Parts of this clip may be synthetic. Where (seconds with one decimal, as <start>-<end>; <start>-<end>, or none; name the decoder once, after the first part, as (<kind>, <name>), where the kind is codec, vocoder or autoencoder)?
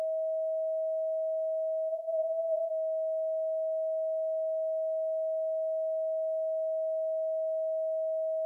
1.9-2.7 (vocoder, BigVGAN v2)